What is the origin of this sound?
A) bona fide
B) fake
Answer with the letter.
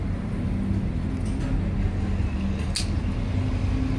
A